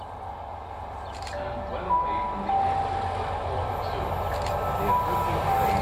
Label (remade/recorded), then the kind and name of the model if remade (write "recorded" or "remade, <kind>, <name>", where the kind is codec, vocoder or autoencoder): recorded